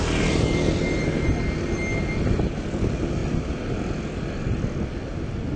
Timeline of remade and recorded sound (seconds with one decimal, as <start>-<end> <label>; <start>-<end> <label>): 0.0-5.6 recorded